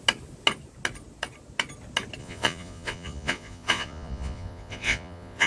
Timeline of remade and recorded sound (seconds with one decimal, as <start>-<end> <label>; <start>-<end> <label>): 0.0-2.2 recorded; 2.2-5.5 remade